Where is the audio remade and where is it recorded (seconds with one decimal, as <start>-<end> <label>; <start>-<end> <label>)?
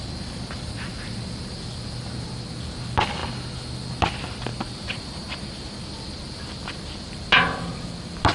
0.0-8.3 remade